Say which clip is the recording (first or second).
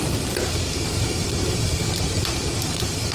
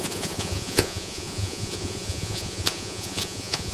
first